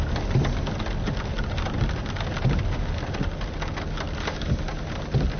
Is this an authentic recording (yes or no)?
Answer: yes